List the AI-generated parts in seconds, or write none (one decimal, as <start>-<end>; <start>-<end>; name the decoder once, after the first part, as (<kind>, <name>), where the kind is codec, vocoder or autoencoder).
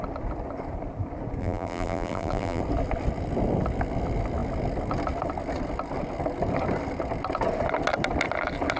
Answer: 1.4-2.6 (vocoder, BigVGAN v2)